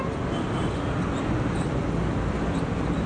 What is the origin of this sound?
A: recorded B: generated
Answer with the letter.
A